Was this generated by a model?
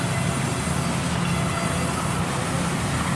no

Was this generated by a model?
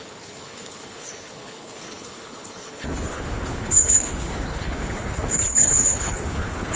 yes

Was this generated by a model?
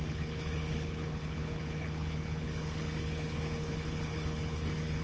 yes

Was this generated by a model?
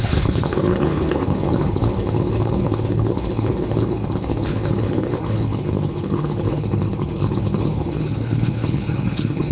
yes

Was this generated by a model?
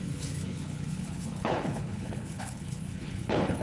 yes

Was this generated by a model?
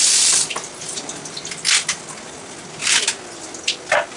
no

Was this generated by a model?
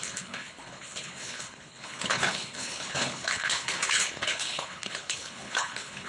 yes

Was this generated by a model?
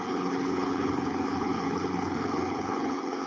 yes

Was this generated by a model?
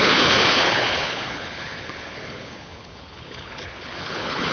yes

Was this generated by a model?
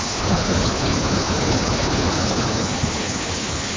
yes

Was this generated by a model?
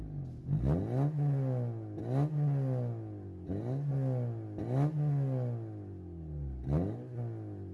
no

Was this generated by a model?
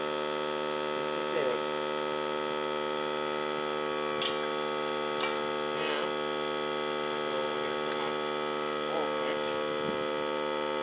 no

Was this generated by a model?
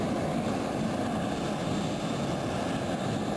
no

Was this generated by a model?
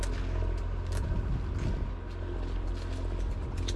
no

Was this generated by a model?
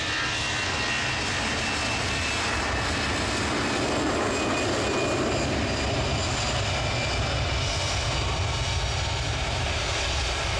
no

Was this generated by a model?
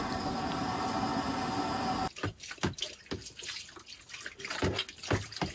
no